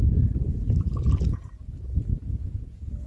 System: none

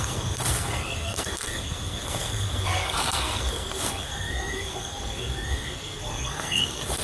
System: codec, SNAC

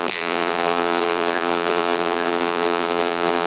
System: vocoder, BigVGAN v2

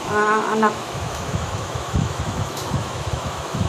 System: autoencoder, DAC-VAE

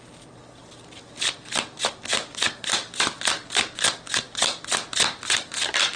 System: none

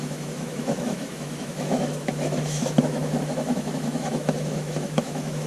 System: autoencoder, DAC-VAE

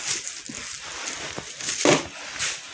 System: none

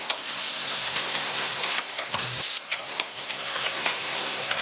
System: codec, SNAC